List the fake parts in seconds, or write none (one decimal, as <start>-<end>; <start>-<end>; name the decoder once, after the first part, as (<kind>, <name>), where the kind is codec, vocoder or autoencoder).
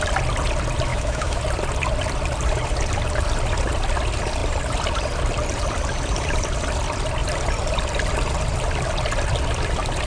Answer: 0.9-1.4 (autoencoder, DAC-VAE)